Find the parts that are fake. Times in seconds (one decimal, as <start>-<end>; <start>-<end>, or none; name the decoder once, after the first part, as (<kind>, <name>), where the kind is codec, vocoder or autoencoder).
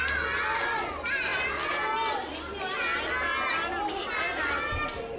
none